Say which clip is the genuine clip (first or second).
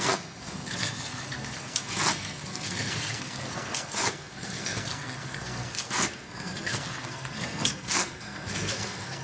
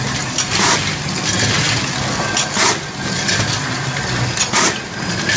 second